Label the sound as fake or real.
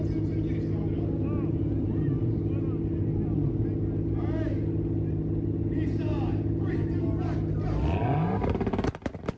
real